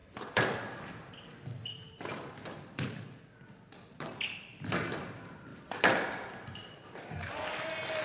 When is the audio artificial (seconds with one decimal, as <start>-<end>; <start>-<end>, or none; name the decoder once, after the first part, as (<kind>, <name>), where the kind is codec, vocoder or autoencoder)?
0.0-3.2 (vocoder, BigVGAN v2); 5.5-7.0